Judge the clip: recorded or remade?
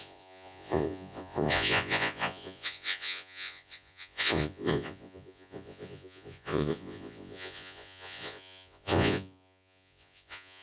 remade